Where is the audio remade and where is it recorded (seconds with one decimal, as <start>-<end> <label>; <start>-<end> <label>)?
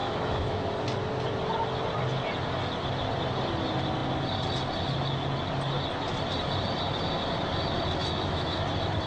0.0-0.7 remade; 0.7-8.0 recorded; 8.0-8.6 remade; 8.6-9.1 recorded